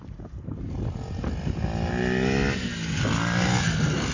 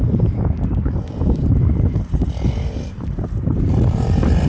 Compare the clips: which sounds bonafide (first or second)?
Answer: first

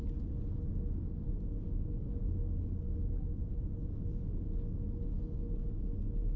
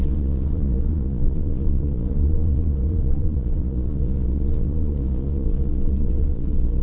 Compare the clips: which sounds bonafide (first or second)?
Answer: first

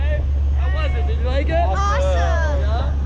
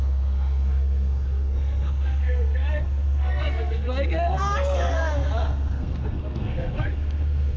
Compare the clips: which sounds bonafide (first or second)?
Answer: first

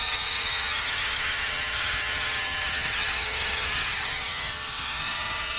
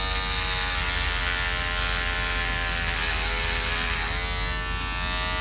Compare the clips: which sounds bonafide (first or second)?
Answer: second